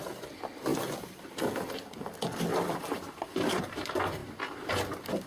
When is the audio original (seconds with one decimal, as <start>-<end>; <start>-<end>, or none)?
0.0-0.7; 1.3-2.5; 3.6-5.3